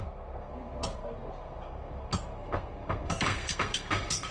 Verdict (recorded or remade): remade